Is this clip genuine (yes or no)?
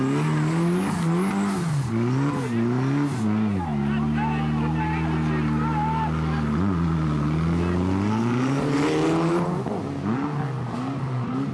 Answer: yes